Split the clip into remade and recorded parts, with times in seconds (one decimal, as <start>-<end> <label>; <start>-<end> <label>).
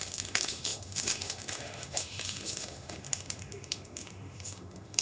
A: 0.0-5.0 remade